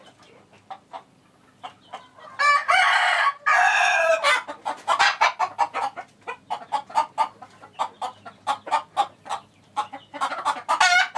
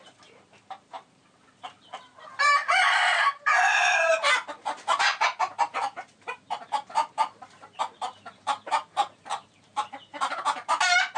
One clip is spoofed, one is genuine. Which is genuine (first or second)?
first